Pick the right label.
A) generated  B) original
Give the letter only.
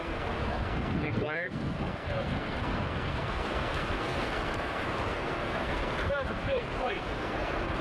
A